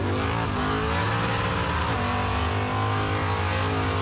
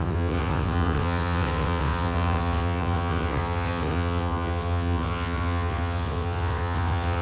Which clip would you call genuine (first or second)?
first